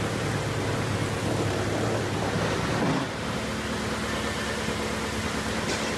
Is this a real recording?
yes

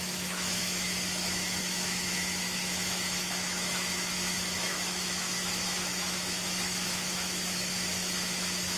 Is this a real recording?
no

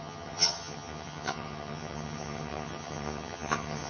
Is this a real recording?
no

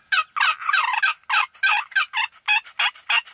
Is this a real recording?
yes